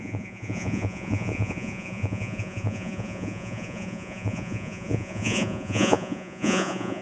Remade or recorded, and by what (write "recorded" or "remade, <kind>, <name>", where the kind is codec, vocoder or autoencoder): remade, vocoder, Vocos